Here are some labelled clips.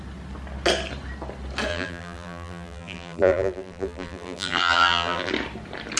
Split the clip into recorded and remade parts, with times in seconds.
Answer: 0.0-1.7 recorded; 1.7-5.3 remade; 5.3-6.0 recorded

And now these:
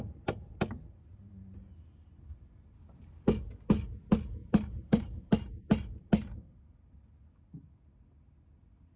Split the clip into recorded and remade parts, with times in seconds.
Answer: 0.0-4.4 recorded; 4.4-5.3 remade; 5.3-9.0 recorded